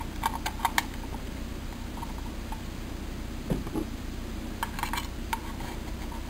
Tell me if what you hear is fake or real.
real